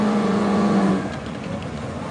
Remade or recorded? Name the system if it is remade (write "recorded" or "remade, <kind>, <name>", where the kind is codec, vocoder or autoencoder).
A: remade, vocoder, Vocos